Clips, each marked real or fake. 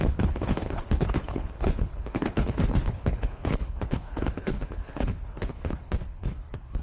fake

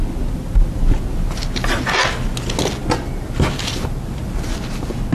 real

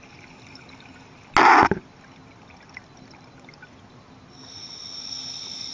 real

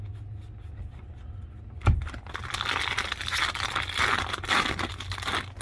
real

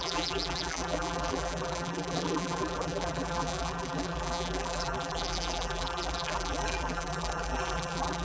fake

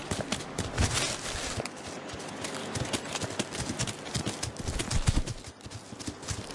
real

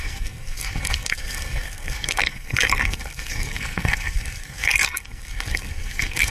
fake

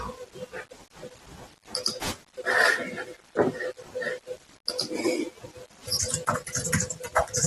real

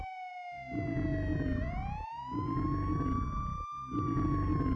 real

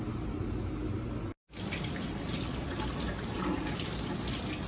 real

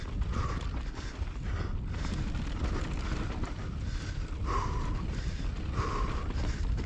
real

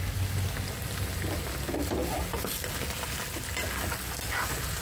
real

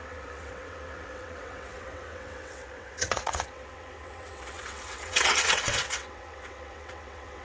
fake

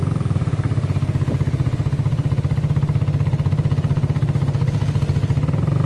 real